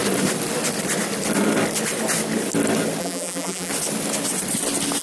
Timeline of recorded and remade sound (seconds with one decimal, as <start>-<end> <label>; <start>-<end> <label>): 0.0-3.0 recorded; 3.0-3.7 remade; 3.7-5.0 recorded